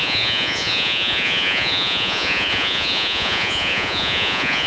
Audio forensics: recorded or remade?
remade